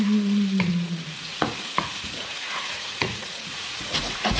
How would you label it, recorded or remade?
remade